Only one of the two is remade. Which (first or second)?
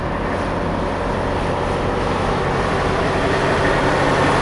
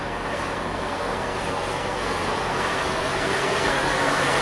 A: second